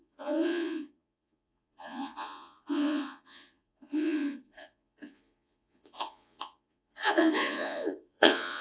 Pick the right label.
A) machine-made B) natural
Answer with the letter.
A